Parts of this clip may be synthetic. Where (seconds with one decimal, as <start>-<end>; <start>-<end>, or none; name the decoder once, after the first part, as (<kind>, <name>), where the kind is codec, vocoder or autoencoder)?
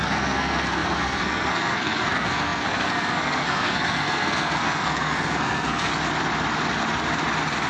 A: 0.0-5.9 (codec, SNAC)